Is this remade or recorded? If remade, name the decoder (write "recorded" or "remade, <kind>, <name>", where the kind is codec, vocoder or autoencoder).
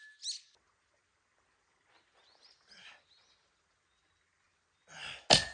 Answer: recorded